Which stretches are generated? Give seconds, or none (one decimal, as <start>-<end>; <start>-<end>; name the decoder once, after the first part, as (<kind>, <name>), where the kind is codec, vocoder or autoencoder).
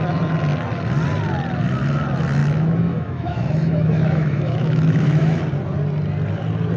2.4-5.4 (autoencoder, DAC-VAE)